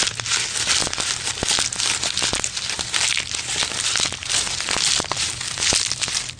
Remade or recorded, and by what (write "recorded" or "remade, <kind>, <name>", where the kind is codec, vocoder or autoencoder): recorded